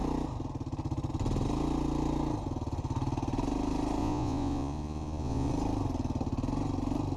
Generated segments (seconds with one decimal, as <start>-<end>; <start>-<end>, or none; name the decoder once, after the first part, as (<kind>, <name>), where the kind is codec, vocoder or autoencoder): 4.0-5.5 (vocoder, Vocos)